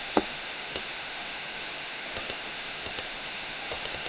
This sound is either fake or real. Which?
fake